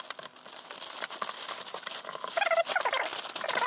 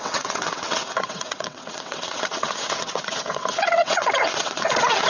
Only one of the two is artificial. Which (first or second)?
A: second